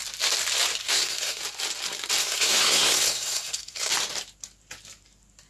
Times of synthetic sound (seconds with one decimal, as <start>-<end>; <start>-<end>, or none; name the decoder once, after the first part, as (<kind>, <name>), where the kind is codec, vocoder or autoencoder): 0.8-1.4 (codec, SNAC); 2.2-3.9